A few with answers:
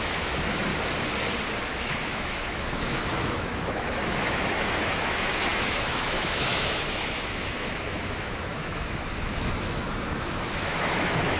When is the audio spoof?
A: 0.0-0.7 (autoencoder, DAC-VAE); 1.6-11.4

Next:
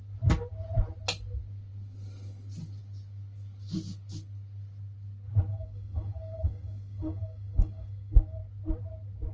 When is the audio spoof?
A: 5.5-8.4 (codec, DAC)

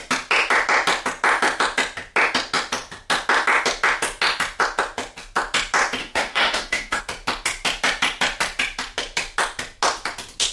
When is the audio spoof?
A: 6.0-7.0 (autoencoder, DAC-VAE)

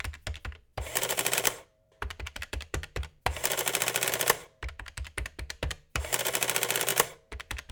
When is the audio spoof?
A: 0.7-3.2 (vocoder, BigVGAN v2); 4.4-6.2; 6.9-7.7

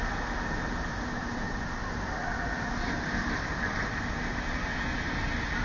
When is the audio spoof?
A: none

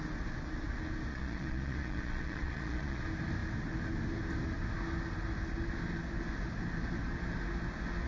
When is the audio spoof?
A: 1.1-3.0 (vocoder, Vocos)

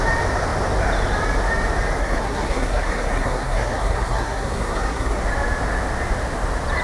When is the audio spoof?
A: 2.0-5.2 (codec, SNAC)